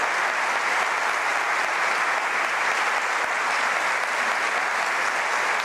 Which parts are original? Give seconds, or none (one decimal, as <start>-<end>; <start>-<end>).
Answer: 0.0-5.6